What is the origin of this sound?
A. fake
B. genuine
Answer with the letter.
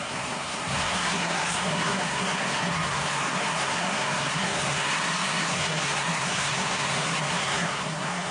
A